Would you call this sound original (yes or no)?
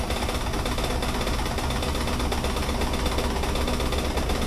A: yes